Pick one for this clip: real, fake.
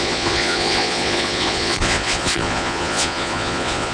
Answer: fake